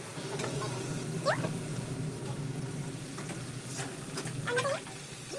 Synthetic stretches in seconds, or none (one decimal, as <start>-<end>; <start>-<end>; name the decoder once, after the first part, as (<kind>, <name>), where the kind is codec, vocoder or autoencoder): none